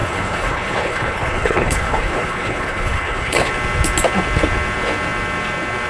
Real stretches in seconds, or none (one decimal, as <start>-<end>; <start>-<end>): 3.5-5.9